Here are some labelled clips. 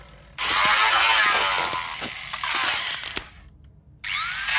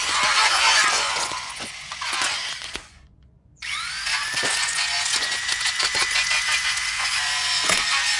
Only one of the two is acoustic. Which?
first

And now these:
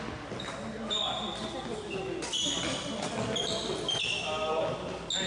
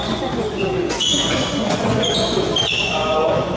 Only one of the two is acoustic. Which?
first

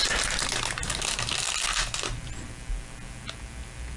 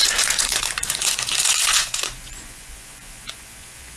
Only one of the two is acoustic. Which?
first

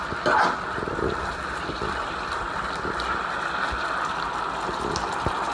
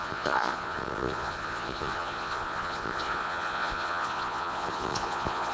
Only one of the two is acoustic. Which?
first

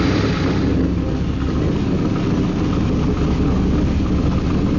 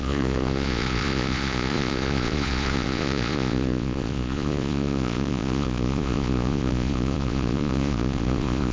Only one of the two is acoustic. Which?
first